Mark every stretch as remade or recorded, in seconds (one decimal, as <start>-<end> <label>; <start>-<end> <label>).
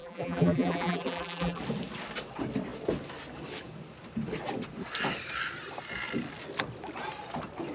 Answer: 0.0-1.6 remade; 1.6-7.7 recorded